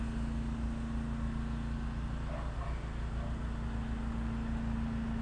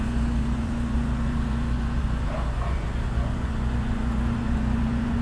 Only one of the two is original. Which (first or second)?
first